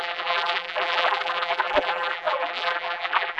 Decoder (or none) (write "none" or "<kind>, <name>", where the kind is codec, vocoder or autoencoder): vocoder, BigVGAN v2